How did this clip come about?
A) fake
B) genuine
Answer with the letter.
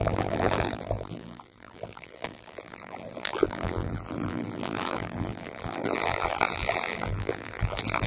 A